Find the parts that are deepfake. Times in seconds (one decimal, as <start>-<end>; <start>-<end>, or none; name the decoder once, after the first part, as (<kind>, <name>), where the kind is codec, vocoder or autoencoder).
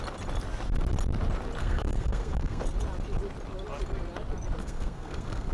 1.6-2.6 (codec, SNAC); 4.6-5.5